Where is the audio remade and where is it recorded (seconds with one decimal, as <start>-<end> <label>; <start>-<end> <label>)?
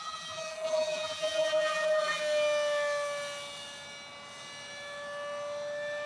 0.0-2.2 remade; 2.2-6.1 recorded